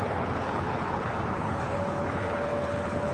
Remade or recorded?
remade